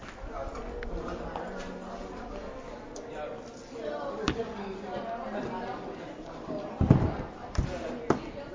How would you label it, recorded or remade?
recorded